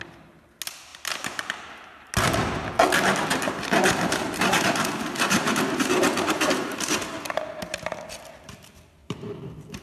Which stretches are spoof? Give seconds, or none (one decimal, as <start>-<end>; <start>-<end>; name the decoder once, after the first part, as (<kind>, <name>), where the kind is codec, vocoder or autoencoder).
0.9-1.7 (vocoder, BigVGAN v2); 3.3-7.1; 9.0-9.8